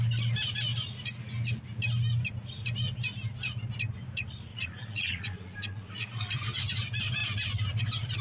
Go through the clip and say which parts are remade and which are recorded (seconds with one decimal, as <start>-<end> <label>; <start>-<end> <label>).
0.0-4.5 recorded; 4.5-6.3 remade; 6.3-8.2 recorded